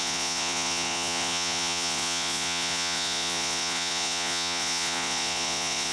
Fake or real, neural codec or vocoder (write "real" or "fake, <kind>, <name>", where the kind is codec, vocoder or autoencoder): fake, vocoder, Vocos